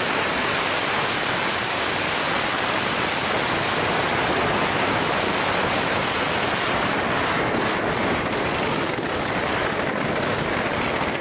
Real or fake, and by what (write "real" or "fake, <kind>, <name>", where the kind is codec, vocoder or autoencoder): real